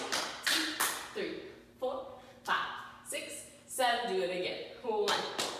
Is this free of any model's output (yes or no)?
yes